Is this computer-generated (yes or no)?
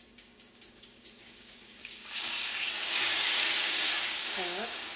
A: yes